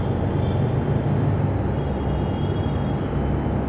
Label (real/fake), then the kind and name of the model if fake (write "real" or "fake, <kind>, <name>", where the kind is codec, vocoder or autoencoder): real